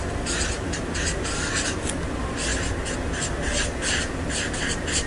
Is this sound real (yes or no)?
yes